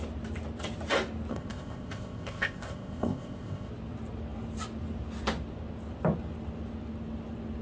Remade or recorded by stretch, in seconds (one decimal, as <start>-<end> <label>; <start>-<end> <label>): 0.0-1.3 recorded; 1.3-3.7 remade; 3.7-7.6 recorded